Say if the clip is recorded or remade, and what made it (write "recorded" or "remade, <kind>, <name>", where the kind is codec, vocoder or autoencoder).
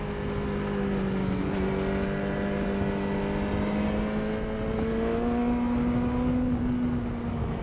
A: recorded